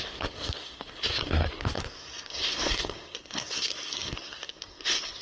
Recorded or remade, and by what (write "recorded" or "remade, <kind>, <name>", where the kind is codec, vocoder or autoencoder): remade, codec, SNAC